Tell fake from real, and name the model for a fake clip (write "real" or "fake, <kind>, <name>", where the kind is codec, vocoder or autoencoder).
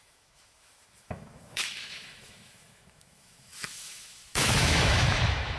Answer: fake, autoencoder, DAC-VAE